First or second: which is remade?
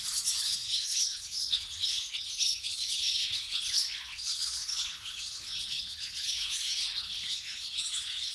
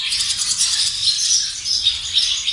first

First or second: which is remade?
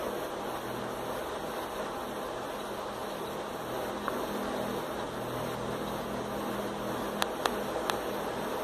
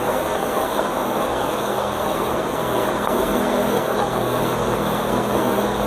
second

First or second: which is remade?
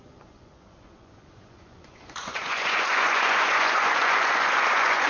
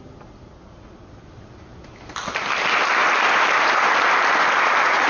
first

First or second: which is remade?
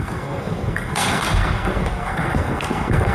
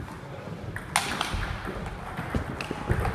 first